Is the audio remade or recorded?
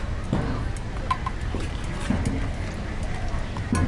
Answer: recorded